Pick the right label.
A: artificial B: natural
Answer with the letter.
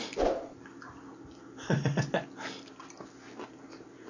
B